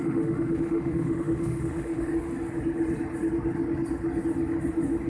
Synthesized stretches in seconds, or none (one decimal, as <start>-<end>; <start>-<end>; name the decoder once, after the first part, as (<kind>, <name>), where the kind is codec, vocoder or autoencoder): 0.0-2.1 (autoencoder, DAC-VAE)